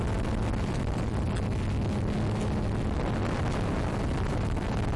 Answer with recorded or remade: recorded